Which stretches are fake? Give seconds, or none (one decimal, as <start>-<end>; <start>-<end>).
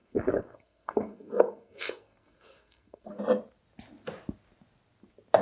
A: 0.0-3.2